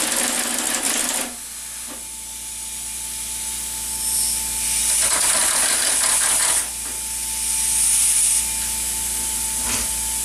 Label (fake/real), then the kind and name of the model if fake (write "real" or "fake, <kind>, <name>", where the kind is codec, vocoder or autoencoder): real